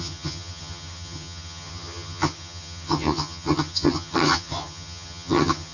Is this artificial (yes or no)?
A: yes